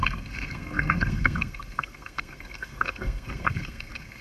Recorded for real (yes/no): no